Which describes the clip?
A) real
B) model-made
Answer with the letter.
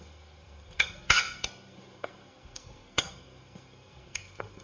B